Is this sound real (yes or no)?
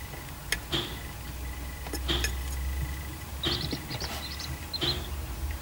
yes